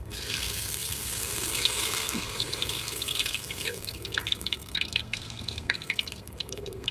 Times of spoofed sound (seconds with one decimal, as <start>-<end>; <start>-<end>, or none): 0.0-6.9